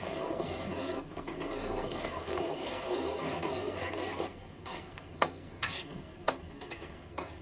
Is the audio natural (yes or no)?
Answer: no